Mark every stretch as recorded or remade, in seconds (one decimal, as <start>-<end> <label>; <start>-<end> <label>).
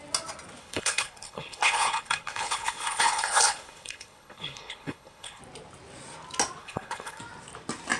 0.0-0.6 recorded; 0.6-5.4 remade; 5.4-6.6 recorded; 6.6-7.2 remade; 7.2-8.0 recorded